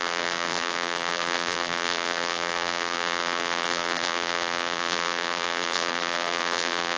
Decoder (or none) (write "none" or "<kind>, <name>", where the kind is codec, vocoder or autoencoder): vocoder, BigVGAN v2